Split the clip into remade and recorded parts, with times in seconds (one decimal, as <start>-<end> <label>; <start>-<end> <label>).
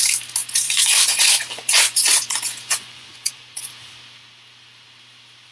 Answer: 0.0-0.4 recorded; 0.4-3.7 remade; 3.7-5.5 recorded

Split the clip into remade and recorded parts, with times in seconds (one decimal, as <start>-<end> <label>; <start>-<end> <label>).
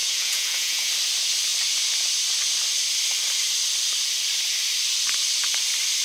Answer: 0.0-0.9 remade; 0.9-6.0 recorded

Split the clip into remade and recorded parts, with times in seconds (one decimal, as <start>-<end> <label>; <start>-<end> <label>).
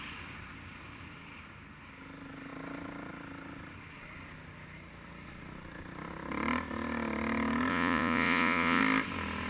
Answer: 0.0-7.7 recorded; 7.7-8.8 remade; 8.8-9.5 recorded